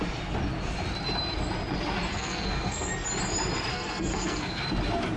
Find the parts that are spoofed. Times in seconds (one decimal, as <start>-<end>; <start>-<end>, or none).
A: 2.1-2.9; 3.7-4.6